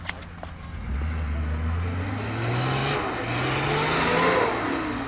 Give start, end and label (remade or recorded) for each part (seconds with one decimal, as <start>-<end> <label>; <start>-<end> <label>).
0.0-5.1 recorded